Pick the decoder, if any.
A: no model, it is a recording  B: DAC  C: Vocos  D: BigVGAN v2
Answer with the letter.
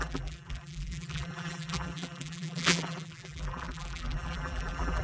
D